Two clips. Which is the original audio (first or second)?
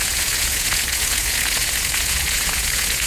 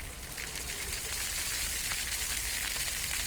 second